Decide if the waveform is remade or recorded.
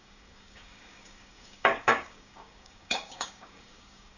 remade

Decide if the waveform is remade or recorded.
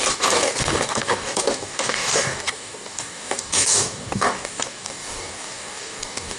remade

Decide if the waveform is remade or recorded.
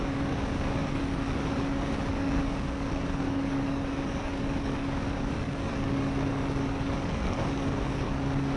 remade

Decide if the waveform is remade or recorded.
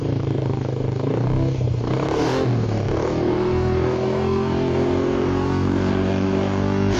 remade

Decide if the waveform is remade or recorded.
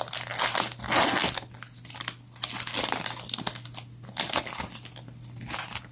recorded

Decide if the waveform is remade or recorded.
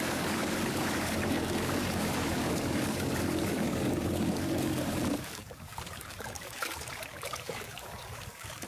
remade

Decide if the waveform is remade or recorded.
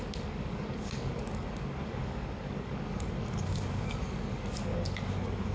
remade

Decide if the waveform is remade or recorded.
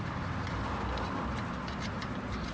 recorded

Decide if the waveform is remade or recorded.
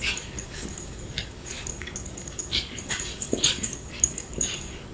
remade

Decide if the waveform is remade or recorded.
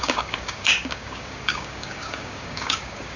remade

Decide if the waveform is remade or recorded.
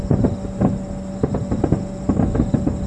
recorded